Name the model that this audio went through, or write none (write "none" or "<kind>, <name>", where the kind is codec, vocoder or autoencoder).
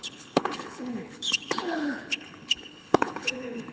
codec, HILCodec